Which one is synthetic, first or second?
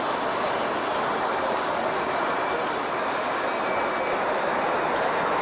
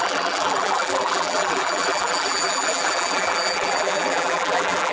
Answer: second